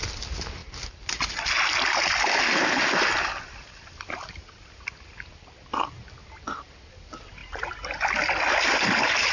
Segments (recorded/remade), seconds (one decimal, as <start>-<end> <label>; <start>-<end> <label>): 0.0-9.3 recorded

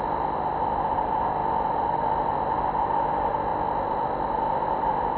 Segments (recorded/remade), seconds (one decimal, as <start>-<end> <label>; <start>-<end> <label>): 0.0-5.2 recorded

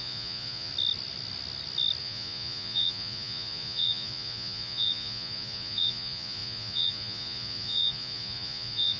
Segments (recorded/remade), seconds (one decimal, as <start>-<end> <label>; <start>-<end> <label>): 0.0-0.7 remade; 0.7-2.0 recorded; 2.0-9.0 remade

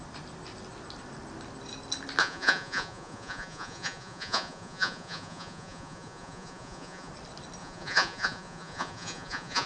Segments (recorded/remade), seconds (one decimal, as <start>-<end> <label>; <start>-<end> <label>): 0.0-2.2 recorded; 2.2-7.1 remade; 7.1-7.6 recorded; 7.6-9.7 remade

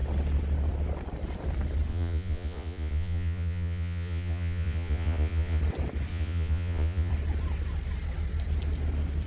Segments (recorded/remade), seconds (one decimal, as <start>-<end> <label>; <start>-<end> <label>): 0.0-1.9 recorded; 1.9-5.6 remade; 5.6-6.1 recorded; 6.1-7.1 remade; 7.1-9.3 recorded

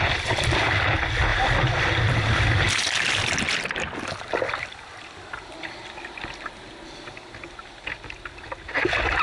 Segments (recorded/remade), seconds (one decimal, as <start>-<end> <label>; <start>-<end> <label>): 0.0-9.2 recorded

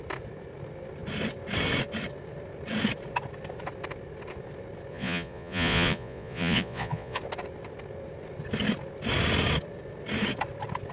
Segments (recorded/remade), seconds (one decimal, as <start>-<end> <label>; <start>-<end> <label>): 0.0-4.9 recorded; 4.9-7.2 remade; 7.2-10.9 recorded

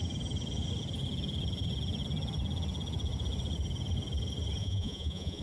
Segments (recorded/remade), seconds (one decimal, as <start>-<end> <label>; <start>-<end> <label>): 0.0-4.6 recorded; 4.6-5.4 remade